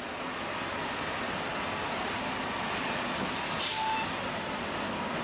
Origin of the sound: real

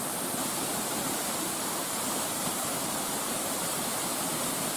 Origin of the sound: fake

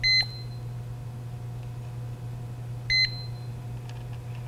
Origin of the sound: real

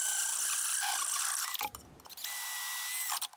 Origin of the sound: real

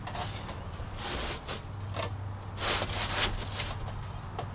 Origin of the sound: real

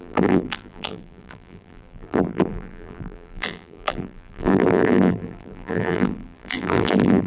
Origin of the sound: fake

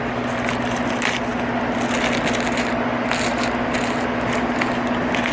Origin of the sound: real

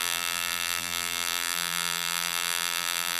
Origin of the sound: fake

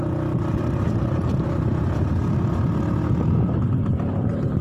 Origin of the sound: real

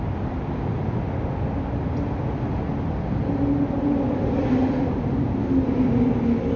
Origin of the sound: real